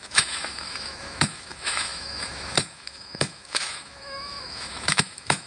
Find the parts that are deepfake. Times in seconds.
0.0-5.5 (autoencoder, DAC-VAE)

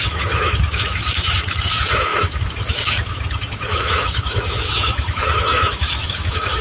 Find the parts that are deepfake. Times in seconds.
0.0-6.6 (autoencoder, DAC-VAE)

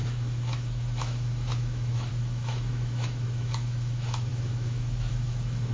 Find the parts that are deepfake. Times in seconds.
0.0-5.7 (autoencoder, DAC-VAE)